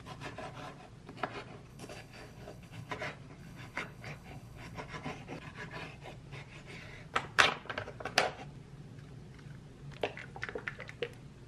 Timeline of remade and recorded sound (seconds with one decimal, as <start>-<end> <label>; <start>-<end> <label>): 0.0-1.7 recorded; 1.7-2.9 remade; 2.9-3.4 recorded; 3.4-4.8 remade; 4.8-11.5 recorded